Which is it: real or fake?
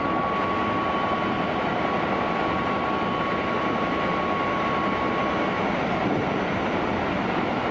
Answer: real